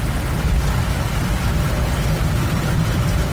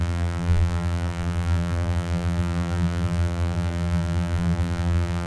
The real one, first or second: first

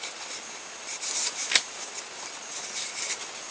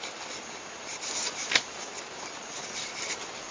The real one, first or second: first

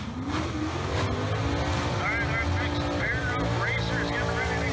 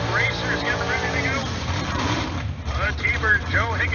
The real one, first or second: first